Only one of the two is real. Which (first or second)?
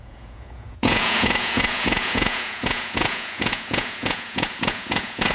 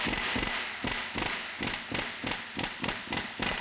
second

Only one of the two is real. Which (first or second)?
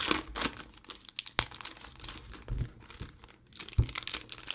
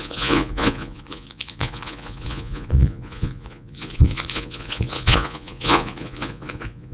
first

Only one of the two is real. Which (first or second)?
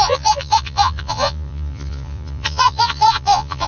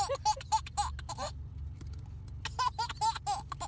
second